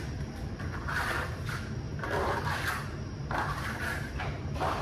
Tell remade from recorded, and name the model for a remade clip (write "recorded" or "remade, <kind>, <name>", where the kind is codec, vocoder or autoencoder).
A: remade, vocoder, BigVGAN v2